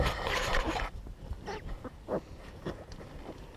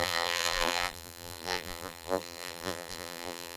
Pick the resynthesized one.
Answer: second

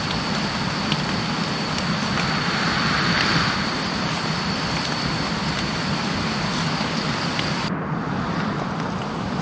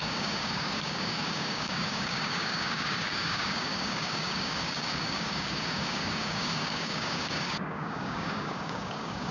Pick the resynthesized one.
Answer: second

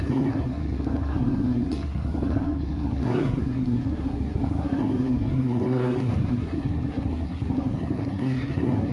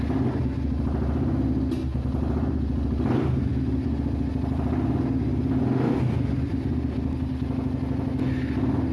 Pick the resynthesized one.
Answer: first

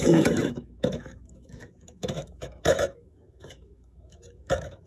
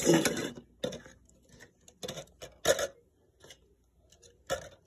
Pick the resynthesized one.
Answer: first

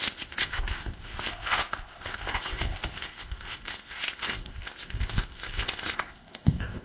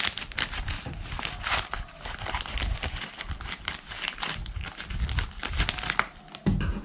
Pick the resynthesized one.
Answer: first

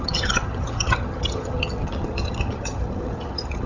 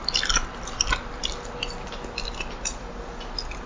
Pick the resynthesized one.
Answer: first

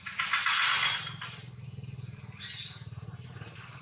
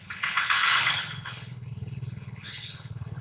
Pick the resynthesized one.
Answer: second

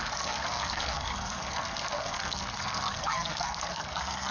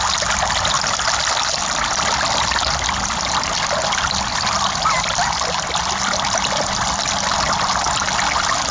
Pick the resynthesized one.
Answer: first